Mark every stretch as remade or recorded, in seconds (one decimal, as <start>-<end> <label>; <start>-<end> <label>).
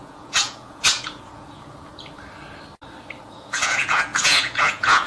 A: 0.0-1.9 remade; 1.9-3.2 recorded; 3.2-5.1 remade